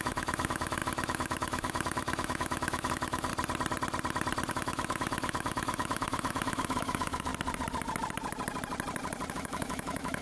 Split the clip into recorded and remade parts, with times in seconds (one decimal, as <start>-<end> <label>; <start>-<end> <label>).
0.0-3.3 remade; 3.3-4.5 recorded; 4.5-7.3 remade; 7.3-9.3 recorded; 9.3-10.2 remade